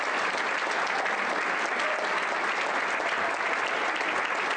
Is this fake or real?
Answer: real